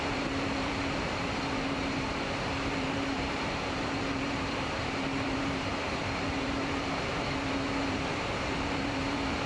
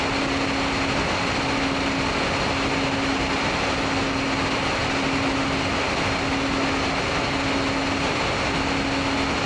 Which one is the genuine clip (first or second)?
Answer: second